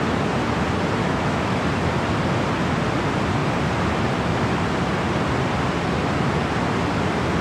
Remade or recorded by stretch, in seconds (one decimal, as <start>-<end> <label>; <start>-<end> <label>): 0.0-1.0 recorded; 1.0-1.6 remade; 1.6-7.4 recorded